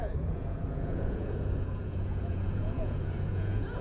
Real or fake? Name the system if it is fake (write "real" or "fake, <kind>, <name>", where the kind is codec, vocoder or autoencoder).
fake, vocoder, Vocos